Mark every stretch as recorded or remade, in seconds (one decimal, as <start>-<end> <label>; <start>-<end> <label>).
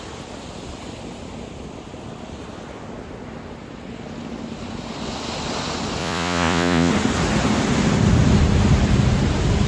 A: 0.0-6.0 recorded; 6.0-6.9 remade; 6.9-9.7 recorded